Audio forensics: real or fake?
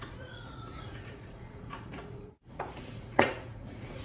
fake